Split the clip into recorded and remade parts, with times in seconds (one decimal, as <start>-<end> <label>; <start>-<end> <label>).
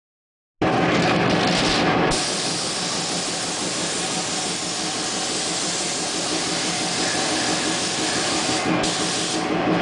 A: 0.0-9.8 recorded